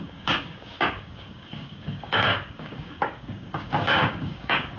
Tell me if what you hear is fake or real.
fake